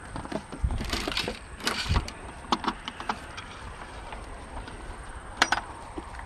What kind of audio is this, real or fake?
fake